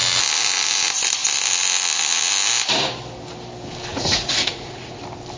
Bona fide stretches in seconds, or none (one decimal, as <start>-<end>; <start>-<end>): 0.0-3.9; 5.0-5.4